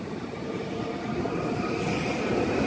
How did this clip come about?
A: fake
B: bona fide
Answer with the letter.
B